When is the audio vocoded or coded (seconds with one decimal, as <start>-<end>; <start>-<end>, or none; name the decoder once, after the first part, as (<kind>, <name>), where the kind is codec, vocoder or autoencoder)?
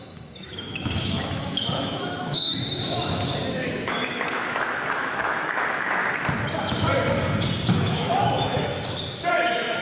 0.0-2.6 (autoencoder, DAC-VAE); 3.5-6.0; 7.7-8.7; 9.3-9.8